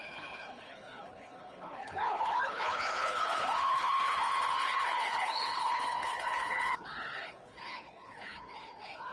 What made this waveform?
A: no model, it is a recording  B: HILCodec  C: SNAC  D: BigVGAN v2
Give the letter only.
B